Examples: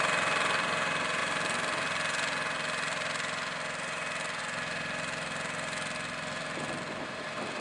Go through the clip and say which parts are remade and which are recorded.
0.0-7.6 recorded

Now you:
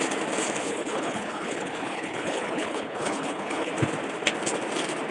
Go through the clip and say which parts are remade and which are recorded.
0.0-0.6 recorded; 0.6-3.7 remade; 3.7-5.1 recorded

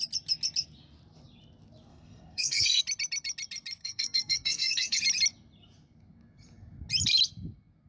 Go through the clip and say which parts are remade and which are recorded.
0.0-1.9 recorded; 1.9-2.8 remade; 2.8-3.8 recorded; 3.8-5.0 remade; 5.0-7.9 recorded

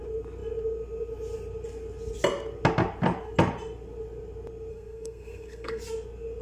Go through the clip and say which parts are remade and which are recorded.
0.0-4.7 recorded; 4.7-5.8 remade; 5.8-6.4 recorded